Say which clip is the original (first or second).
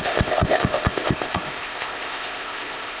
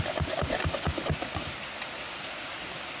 second